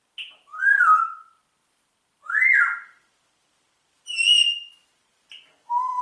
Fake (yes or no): no